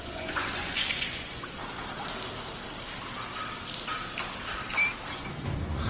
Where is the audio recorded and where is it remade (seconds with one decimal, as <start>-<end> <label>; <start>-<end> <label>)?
0.0-1.6 remade; 1.6-5.1 recorded; 5.1-5.9 remade